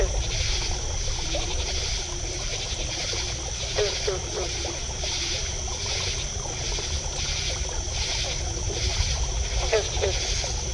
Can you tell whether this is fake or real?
real